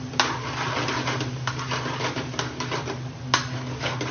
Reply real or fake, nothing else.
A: real